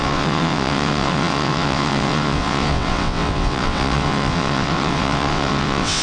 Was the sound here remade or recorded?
remade